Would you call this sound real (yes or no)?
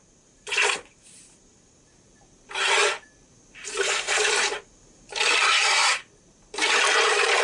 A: no